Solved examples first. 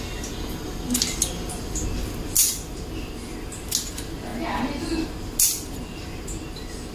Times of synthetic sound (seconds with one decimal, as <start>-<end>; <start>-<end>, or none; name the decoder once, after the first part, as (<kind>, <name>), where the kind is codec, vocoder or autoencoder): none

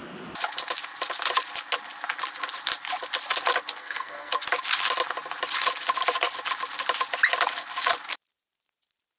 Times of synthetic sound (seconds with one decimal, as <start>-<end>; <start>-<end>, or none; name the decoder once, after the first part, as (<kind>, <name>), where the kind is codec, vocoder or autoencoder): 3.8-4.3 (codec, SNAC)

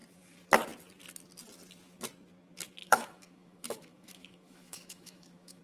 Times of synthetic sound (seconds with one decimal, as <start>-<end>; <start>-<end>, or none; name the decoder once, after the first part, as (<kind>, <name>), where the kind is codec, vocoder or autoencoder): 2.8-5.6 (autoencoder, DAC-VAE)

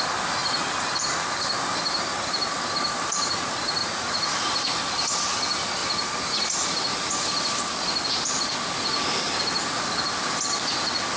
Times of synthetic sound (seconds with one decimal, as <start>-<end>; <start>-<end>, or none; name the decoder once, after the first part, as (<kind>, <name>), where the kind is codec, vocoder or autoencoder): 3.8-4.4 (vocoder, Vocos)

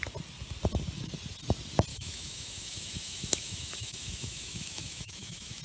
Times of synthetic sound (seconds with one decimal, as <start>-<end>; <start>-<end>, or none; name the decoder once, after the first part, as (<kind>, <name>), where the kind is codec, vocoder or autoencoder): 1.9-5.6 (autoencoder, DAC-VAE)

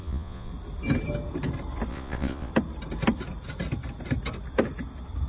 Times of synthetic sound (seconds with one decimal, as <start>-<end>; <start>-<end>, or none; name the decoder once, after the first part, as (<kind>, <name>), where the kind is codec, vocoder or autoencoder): 0.0-0.5 (vocoder, Vocos); 1.9-2.5